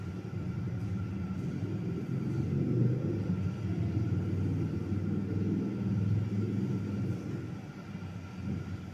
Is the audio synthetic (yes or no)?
no